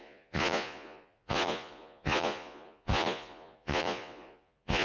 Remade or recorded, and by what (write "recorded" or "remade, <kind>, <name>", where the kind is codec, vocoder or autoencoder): remade, vocoder, Vocos